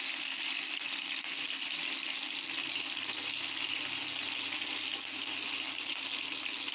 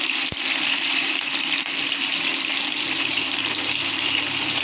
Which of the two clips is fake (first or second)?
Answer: second